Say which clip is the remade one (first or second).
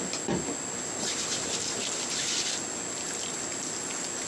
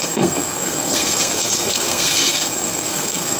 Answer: second